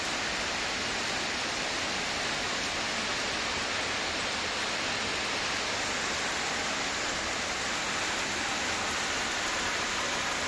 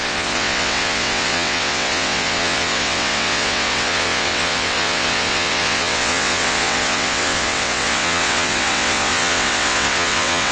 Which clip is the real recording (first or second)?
first